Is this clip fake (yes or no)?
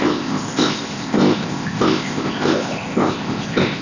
yes